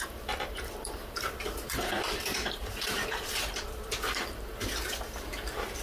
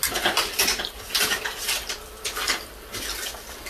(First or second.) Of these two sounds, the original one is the second